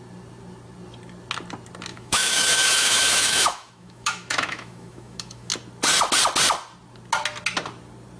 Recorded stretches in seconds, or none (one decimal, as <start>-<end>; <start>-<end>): 0.0-1.9; 5.5-8.2

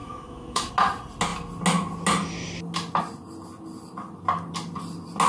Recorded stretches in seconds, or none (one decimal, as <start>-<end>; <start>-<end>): 0.7-5.3